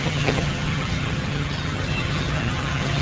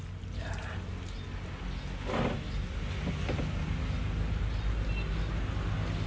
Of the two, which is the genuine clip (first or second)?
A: second